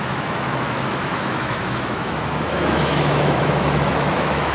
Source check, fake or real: fake